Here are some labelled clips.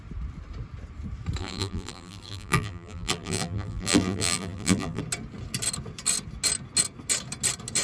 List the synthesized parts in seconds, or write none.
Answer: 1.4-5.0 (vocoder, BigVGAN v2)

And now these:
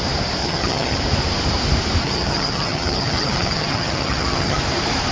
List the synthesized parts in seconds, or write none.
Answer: 0.4-1.0 (vocoder, HiFi-GAN); 2.0-4.6